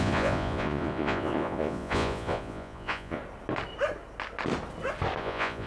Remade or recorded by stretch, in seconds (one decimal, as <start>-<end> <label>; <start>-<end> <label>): 0.0-3.2 remade; 3.2-5.2 recorded; 5.2-5.7 remade